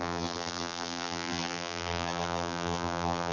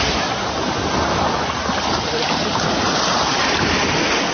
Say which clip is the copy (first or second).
first